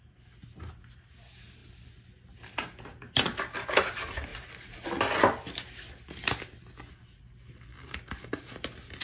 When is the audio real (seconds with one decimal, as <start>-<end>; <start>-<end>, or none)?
0.0-7.7; 8.5-9.0

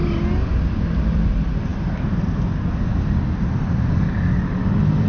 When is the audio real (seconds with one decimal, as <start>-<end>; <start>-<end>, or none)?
0.0-5.1